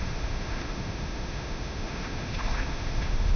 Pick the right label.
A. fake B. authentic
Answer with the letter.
A